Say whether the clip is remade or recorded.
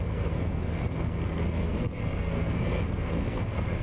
remade